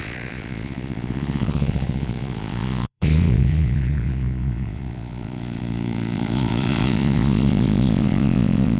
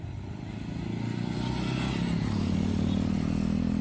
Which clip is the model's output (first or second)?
first